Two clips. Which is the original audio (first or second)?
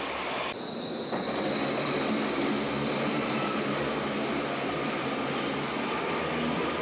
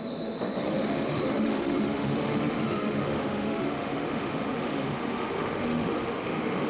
first